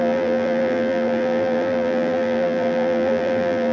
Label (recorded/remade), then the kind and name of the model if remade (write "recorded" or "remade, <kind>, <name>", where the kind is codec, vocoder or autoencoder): remade, vocoder, BigVGAN v2